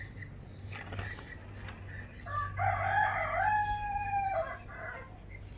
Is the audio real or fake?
real